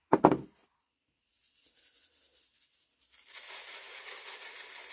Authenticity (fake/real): real